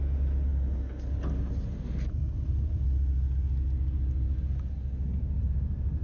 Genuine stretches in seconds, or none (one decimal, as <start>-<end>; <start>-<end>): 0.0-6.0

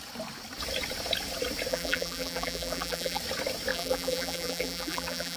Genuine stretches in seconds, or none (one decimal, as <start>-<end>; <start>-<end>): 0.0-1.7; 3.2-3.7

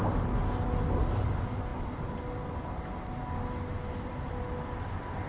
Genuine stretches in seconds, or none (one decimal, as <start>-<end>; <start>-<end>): 0.0-5.3

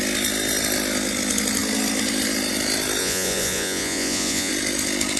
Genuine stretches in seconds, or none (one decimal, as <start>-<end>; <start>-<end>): 0.0-3.0; 4.5-5.2

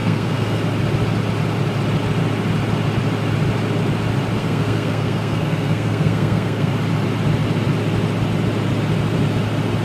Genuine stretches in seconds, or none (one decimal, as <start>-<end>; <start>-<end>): 0.6-4.4; 6.7-9.8